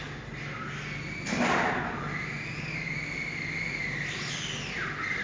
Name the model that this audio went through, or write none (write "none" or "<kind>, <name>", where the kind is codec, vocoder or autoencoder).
none